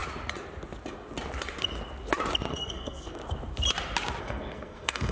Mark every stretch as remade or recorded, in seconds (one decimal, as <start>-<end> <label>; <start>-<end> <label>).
0.0-2.5 recorded; 2.5-3.2 remade; 3.2-4.2 recorded; 4.2-5.1 remade